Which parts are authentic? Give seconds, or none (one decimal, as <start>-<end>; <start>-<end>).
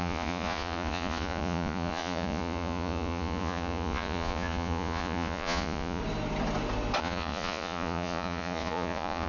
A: 6.0-7.0